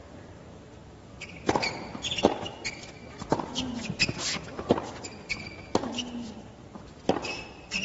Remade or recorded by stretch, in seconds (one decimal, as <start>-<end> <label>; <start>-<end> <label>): 0.0-7.8 recorded